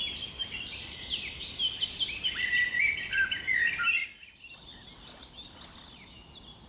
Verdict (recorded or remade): remade